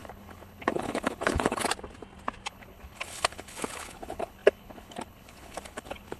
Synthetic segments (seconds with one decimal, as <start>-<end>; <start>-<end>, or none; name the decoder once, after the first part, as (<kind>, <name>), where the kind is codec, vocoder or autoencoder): 0.0-1.6 (codec, HILCodec); 2.5-6.2